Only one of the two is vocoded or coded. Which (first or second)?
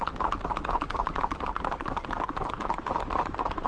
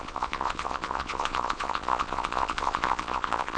second